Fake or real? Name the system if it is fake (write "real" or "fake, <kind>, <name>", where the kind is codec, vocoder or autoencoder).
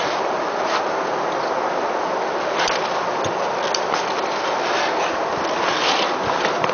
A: real